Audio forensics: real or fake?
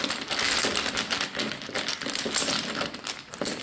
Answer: real